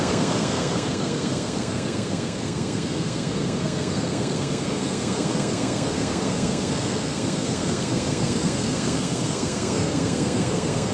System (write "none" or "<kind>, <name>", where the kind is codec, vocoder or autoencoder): codec, SNAC